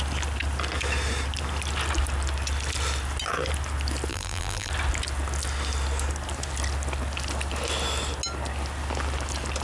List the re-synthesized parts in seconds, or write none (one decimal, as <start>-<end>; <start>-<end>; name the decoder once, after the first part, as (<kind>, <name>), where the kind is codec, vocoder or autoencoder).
4.1-4.7 (vocoder, BigVGAN v2)